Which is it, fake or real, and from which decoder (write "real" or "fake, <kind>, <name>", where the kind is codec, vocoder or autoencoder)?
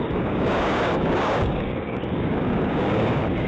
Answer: fake, codec, DAC